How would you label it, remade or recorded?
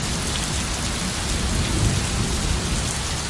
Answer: recorded